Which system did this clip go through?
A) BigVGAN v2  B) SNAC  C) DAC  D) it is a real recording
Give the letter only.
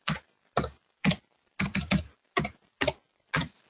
D